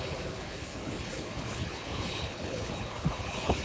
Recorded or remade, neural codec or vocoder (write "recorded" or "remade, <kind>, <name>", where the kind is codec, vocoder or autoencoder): remade, codec, HILCodec